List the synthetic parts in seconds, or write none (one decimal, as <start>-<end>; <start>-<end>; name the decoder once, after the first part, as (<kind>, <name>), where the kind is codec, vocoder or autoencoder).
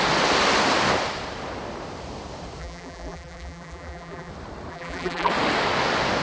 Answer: 2.6-4.3 (vocoder, BigVGAN v2); 4.7-5.3